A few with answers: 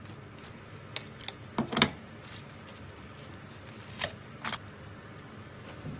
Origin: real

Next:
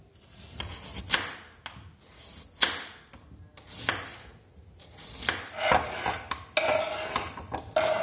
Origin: real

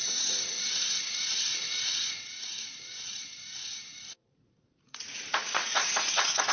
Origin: fake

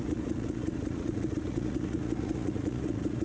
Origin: fake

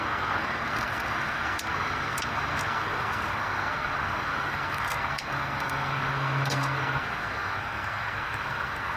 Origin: fake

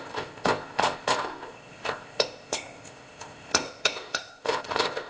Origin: fake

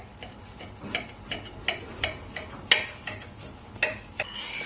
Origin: real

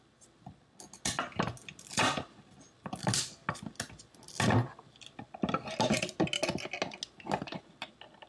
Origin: real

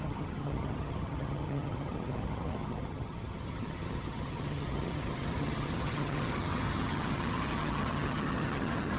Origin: fake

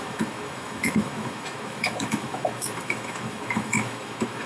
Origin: fake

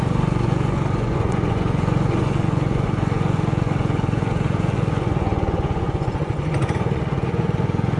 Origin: fake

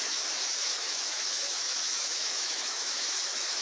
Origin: fake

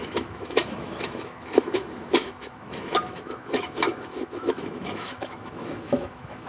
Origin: fake